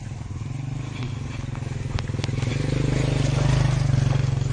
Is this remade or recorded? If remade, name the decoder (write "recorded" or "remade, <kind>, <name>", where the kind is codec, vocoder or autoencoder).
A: recorded